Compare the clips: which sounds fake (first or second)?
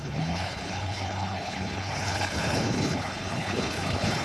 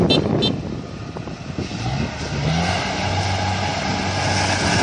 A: first